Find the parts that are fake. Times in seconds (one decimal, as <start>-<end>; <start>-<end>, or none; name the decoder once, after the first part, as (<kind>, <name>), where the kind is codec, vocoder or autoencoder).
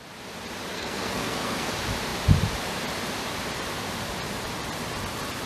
0.7-1.7 (codec, SNAC)